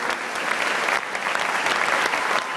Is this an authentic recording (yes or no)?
yes